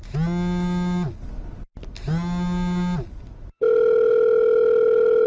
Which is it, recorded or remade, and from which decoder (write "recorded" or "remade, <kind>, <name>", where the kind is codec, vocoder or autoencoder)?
recorded